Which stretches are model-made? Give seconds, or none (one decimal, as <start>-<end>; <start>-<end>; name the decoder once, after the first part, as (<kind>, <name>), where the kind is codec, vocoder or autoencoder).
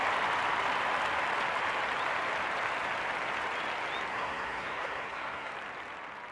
4.1-5.5 (codec, SNAC)